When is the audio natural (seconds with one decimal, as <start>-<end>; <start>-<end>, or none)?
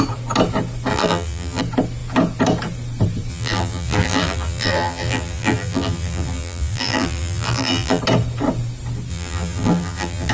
0.0-0.9; 1.6-3.3; 8.0-9.1